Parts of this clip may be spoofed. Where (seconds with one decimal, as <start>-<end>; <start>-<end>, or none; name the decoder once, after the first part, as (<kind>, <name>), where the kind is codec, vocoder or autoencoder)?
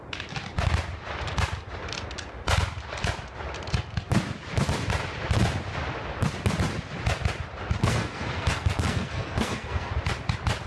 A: 7.8-9.9 (codec, SNAC)